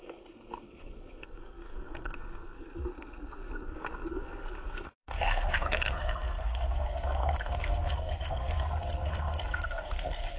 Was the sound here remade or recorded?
remade